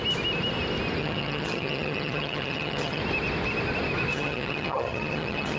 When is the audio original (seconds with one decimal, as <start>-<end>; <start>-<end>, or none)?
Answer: 0.0-1.0; 3.0-4.1